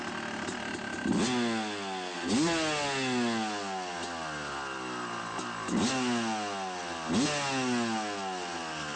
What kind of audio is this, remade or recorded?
recorded